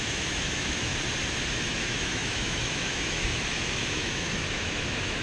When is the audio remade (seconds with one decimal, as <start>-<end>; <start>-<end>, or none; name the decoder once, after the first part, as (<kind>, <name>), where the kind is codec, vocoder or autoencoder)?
0.0-0.9 (autoencoder, DAC-VAE); 1.5-5.2